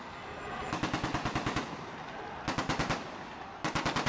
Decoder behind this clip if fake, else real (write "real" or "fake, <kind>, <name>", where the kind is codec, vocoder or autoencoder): real